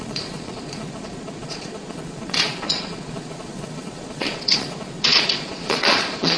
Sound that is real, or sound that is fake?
fake